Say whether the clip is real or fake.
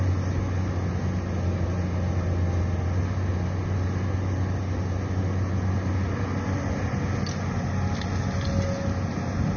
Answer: real